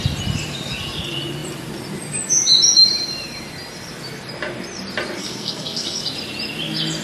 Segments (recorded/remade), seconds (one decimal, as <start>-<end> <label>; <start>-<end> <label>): 0.0-5.2 recorded; 5.2-6.0 remade; 6.0-7.0 recorded